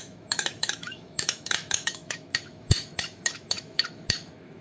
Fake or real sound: fake